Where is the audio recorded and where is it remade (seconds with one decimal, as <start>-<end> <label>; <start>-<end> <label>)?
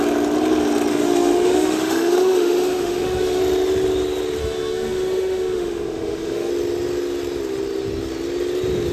0.0-0.9 recorded; 0.9-3.4 remade; 3.4-4.4 recorded; 4.4-6.5 remade; 6.5-8.9 recorded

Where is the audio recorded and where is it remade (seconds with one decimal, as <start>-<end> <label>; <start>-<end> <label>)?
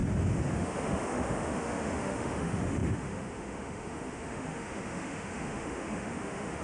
0.0-0.5 recorded; 0.5-6.6 remade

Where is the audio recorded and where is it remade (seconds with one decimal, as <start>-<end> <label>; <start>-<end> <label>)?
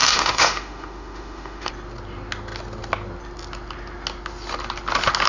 0.0-1.7 remade; 1.7-5.3 recorded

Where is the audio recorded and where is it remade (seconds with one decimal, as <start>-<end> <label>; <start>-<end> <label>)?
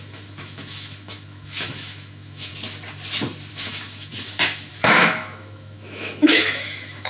0.0-2.5 remade; 2.5-3.5 recorded; 3.5-7.1 remade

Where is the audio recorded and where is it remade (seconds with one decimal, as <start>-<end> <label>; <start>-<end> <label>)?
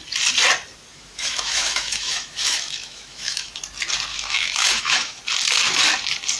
0.0-0.9 recorded; 0.9-3.6 remade; 3.6-4.1 recorded; 4.1-5.2 remade; 5.2-6.4 recorded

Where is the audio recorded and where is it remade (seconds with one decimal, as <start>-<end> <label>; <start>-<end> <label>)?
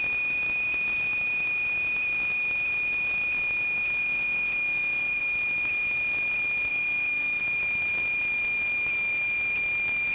0.0-4.0 recorded; 4.0-5.2 remade; 5.2-6.7 recorded; 6.7-7.4 remade; 7.4-10.1 recorded